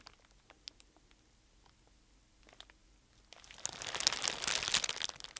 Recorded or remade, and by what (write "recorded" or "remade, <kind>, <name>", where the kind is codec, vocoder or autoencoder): recorded